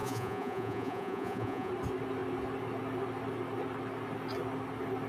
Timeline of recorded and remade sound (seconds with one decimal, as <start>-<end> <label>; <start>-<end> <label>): 0.0-1.7 remade; 1.7-5.1 recorded